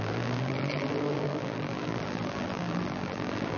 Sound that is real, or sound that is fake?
fake